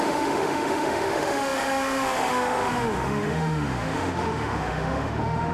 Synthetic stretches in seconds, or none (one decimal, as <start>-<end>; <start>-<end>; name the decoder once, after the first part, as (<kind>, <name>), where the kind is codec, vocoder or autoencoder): 0.0-5.5 (autoencoder, DAC-VAE)